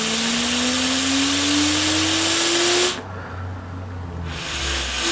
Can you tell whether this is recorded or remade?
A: recorded